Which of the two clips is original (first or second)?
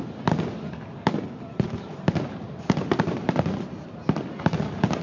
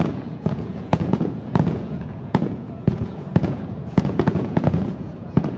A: first